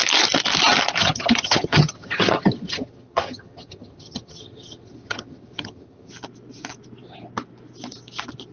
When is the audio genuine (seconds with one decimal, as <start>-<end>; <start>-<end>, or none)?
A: 0.0-1.0; 6.1-8.5